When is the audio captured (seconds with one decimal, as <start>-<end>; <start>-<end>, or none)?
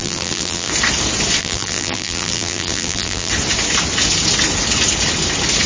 0.7-1.4; 3.3-5.7